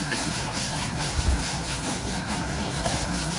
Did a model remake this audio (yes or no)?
yes